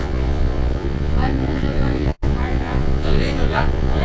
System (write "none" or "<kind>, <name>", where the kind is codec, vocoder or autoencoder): vocoder, Vocos